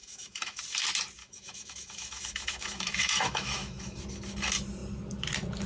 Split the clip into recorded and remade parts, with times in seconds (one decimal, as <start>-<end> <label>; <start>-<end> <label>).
0.0-0.6 remade; 0.6-1.2 recorded; 1.2-4.0 remade; 4.0-5.7 recorded